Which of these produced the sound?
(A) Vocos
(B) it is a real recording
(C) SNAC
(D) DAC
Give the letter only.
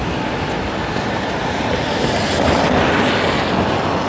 B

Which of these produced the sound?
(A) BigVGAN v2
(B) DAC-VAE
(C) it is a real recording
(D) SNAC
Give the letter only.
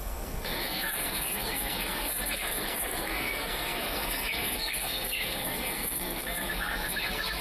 D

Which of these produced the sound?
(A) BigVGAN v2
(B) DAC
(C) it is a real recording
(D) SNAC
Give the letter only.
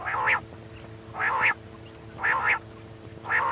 C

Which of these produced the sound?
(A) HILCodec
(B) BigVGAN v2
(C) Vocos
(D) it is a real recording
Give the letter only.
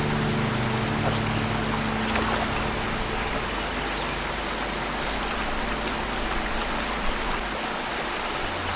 D